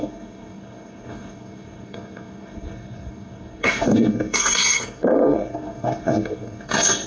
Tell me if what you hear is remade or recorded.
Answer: remade